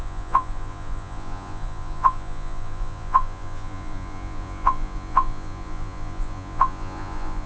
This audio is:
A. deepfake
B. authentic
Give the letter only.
A